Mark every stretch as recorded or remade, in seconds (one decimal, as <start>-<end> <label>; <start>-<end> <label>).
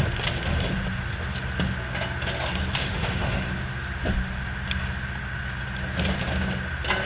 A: 0.0-2.8 recorded; 2.8-3.5 remade; 3.5-7.1 recorded